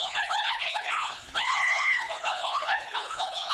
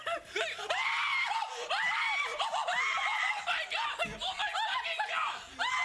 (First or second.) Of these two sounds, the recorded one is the second